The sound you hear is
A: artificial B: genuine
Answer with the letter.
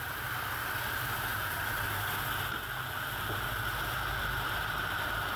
B